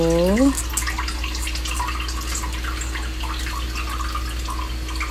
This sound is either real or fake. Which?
real